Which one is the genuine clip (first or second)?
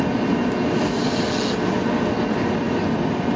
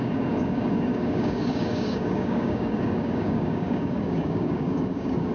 first